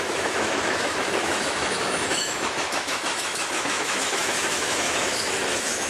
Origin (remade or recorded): remade